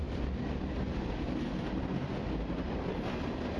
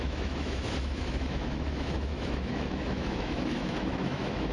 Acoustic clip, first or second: first